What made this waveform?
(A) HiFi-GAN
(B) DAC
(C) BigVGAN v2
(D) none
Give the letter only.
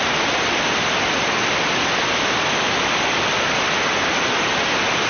D